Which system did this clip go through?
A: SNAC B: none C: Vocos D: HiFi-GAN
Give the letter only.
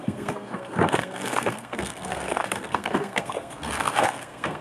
A